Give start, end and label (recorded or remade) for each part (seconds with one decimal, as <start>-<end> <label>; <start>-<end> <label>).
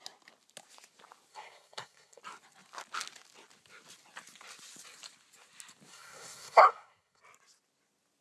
0.0-1.3 recorded; 1.3-2.2 remade; 2.2-5.9 recorded; 5.9-7.2 remade; 7.2-8.2 recorded